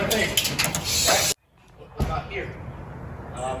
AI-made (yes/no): no